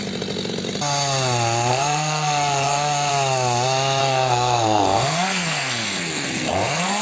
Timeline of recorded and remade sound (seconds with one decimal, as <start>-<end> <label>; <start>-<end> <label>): 0.0-1.7 recorded; 1.7-3.1 remade; 3.1-4.0 recorded; 4.0-7.0 remade